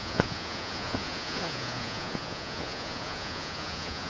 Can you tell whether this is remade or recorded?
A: remade